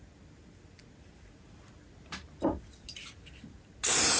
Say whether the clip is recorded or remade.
recorded